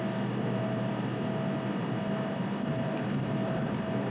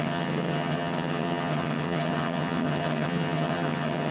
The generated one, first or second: second